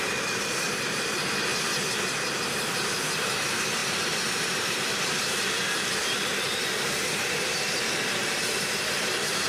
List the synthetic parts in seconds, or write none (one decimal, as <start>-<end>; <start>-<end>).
0.0-1.5; 2.3-9.5